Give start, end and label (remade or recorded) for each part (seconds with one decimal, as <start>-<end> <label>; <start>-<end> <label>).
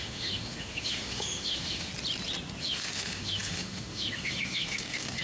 0.0-1.9 remade; 1.9-2.6 recorded; 2.6-5.2 remade